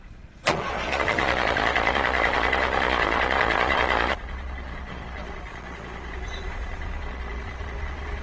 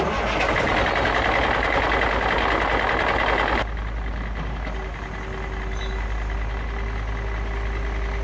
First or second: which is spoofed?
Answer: first